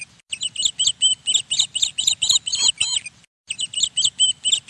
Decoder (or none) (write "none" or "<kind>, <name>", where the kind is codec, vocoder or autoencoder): none